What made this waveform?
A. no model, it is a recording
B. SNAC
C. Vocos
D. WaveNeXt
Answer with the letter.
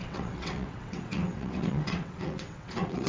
D